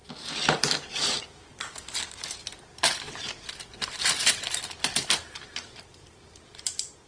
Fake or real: fake